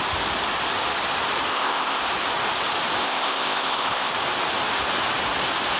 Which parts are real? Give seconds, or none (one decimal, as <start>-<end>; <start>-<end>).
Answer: 0.0-1.5; 2.0-3.0; 4.1-5.8